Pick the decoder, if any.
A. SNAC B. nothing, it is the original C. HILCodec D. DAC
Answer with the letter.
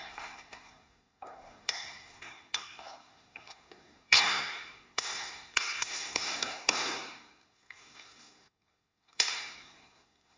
A